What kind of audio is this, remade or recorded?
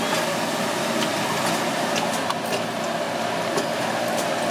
recorded